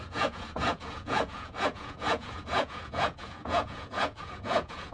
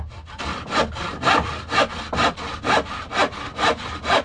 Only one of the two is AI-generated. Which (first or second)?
first